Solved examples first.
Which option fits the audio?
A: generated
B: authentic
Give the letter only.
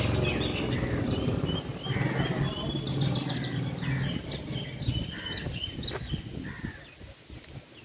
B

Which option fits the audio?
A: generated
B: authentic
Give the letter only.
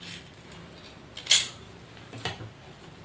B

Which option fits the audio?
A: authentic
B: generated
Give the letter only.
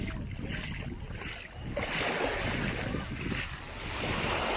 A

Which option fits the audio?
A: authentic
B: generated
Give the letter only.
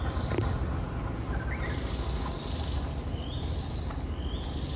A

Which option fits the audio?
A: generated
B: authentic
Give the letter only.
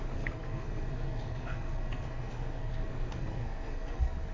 A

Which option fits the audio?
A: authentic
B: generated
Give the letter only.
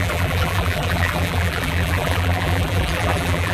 B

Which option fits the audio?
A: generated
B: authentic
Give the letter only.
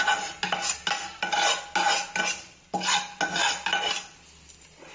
B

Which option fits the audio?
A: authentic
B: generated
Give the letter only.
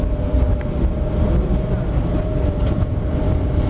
A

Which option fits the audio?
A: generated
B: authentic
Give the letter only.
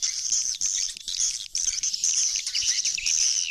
A